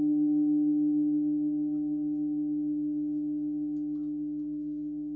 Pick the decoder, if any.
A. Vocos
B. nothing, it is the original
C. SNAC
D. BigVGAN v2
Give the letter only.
B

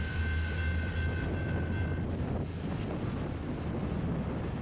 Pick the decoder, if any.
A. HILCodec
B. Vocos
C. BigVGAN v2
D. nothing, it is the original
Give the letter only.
D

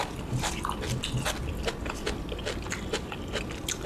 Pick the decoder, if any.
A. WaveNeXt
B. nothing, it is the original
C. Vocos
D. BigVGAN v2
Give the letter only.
B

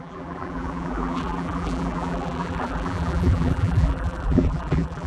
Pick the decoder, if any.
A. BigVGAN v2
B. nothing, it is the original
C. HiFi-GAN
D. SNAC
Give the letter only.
A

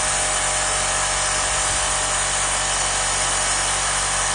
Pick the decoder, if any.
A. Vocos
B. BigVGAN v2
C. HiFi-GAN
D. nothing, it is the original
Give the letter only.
D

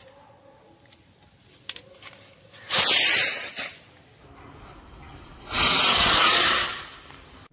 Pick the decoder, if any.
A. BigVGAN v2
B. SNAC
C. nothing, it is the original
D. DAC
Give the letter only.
A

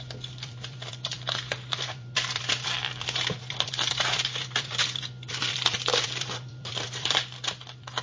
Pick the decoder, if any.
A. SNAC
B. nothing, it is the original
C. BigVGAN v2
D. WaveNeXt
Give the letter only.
C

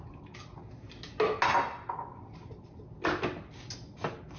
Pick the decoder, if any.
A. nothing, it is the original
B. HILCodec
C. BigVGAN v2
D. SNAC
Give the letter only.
A